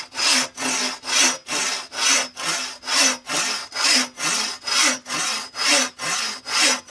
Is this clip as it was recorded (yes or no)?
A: yes